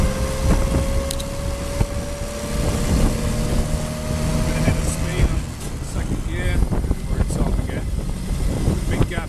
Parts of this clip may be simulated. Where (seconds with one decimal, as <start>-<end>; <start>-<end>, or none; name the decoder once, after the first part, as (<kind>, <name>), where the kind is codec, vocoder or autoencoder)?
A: none